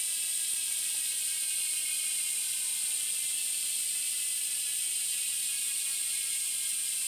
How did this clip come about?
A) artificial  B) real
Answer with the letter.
B